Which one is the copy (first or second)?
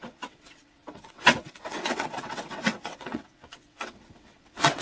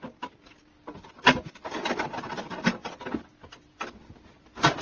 first